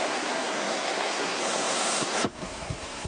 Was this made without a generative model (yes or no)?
no